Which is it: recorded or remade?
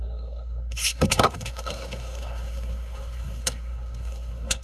remade